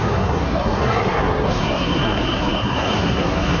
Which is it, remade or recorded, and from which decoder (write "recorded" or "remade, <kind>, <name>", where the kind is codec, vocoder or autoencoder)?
remade, codec, SNAC